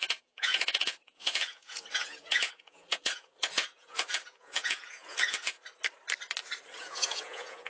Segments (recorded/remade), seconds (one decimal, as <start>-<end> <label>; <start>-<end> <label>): 0.0-5.6 remade; 5.6-6.8 recorded; 6.8-7.7 remade